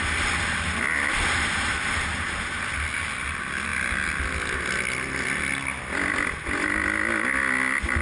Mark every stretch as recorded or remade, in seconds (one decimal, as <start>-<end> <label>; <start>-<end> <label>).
0.0-8.0 recorded